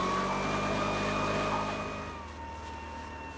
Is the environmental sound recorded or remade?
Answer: recorded